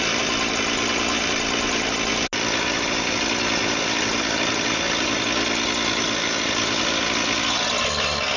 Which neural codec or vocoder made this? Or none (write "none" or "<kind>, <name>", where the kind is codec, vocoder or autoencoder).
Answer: none